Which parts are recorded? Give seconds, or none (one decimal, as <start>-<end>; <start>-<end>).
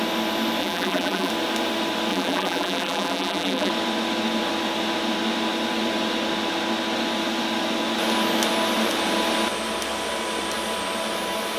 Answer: 0.0-0.6; 1.3-2.1; 3.7-11.6